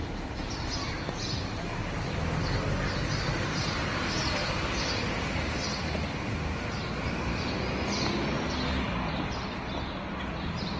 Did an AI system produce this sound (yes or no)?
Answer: no